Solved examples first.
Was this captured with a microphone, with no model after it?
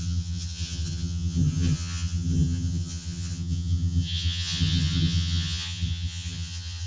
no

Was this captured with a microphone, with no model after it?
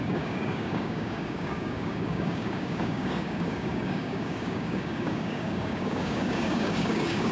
no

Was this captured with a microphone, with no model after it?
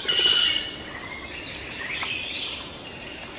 yes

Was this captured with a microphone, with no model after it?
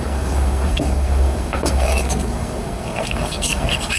no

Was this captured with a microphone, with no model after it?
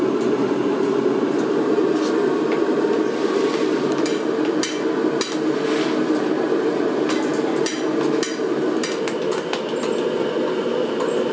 yes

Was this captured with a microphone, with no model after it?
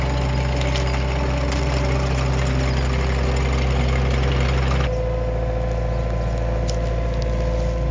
yes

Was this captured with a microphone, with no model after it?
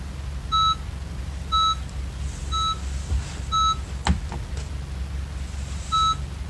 yes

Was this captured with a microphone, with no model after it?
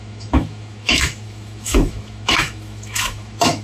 no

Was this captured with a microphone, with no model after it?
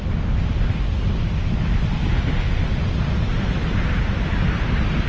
yes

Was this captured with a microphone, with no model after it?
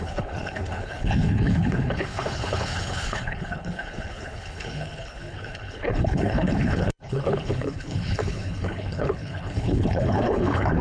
no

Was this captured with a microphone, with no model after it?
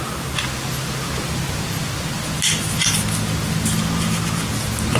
yes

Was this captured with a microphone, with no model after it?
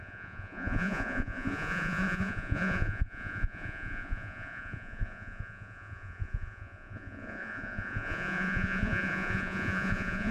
no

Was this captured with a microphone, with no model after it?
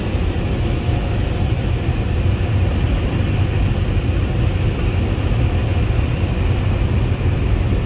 yes